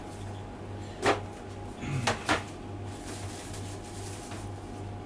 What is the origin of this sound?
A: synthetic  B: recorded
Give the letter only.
B